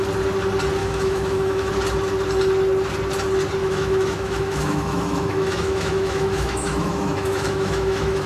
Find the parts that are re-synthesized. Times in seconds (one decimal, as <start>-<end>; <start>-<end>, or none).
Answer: 0.8-1.7; 3.6-8.3